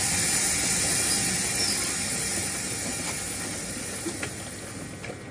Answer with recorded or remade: recorded